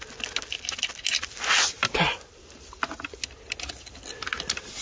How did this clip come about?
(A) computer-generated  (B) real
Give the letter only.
B